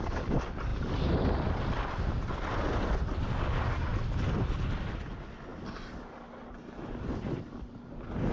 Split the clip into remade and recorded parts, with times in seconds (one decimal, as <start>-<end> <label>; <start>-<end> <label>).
0.0-8.3 recorded